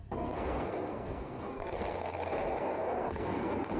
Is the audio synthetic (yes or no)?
yes